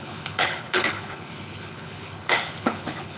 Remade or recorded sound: remade